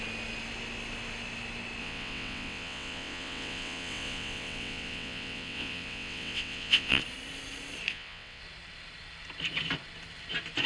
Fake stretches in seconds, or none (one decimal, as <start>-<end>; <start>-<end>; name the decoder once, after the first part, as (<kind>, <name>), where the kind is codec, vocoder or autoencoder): 1.8-7.0 (vocoder, WaveNeXt); 7.9-8.4